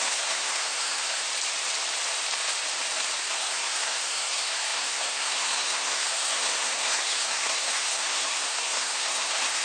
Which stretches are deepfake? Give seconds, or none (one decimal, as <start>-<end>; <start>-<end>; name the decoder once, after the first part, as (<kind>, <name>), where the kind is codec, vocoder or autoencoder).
0.0-1.2 (codec, SNAC); 3.2-9.6